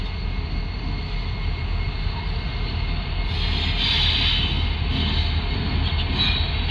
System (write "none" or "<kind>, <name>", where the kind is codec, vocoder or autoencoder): none